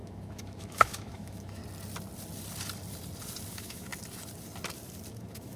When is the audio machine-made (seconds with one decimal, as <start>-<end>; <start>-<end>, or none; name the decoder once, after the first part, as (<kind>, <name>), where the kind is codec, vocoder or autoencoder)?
0.0-1.6 (autoencoder, DAC-VAE); 3.5-3.9; 5.1-5.6

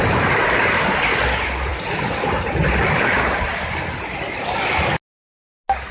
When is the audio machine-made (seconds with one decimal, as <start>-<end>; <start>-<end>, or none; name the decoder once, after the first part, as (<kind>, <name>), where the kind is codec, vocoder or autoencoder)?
none

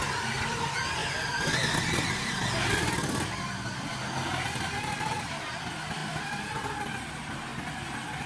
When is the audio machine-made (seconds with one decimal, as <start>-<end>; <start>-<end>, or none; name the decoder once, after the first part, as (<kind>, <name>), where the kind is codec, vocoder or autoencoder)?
none

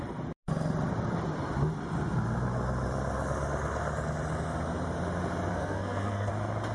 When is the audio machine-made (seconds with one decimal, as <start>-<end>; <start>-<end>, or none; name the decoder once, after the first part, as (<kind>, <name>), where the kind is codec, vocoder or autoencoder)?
5.5-6.3 (codec, SNAC)

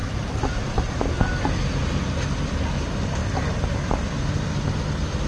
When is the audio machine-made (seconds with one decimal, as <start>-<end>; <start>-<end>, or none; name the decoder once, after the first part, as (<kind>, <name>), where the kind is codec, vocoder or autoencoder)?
none

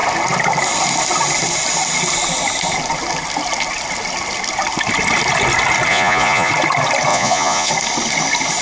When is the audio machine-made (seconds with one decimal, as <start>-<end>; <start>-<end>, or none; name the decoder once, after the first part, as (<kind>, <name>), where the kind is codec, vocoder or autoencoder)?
5.9-6.5 (vocoder, Vocos); 7.1-7.7

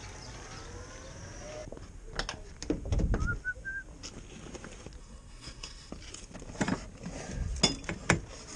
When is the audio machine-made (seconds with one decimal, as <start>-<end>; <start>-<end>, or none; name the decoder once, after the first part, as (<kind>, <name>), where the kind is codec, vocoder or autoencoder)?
5.0-5.9 (codec, SNAC)

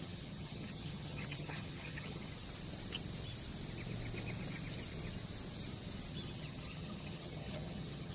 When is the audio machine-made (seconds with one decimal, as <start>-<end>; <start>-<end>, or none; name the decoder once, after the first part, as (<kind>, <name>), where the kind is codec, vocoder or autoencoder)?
0.0-2.3 (vocoder, HiFi-GAN); 6.1-8.1